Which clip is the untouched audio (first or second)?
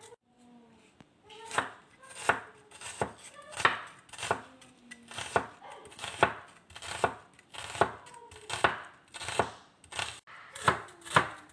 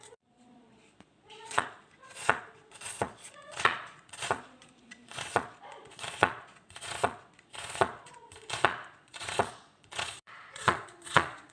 first